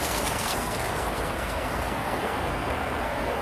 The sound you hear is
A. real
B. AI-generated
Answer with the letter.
B